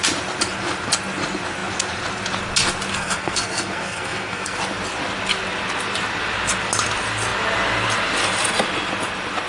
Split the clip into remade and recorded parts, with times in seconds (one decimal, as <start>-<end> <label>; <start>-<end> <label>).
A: 0.0-2.9 recorded; 2.9-4.6 remade; 4.6-9.5 recorded